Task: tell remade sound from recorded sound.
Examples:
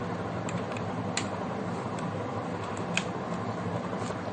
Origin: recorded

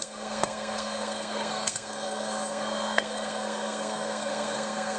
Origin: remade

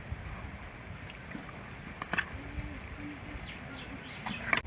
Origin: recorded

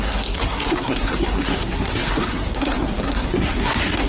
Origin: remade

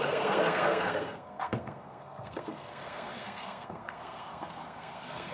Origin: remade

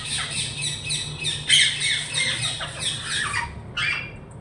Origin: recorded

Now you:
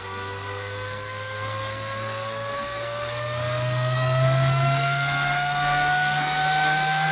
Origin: remade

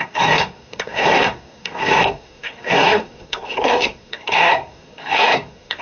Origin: remade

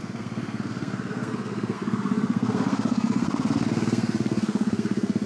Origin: remade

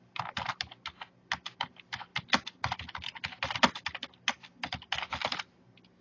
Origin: recorded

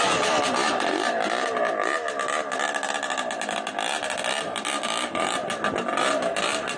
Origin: recorded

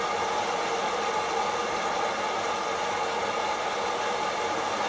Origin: recorded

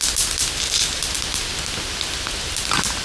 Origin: recorded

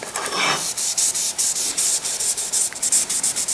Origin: recorded